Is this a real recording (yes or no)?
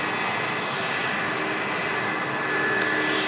yes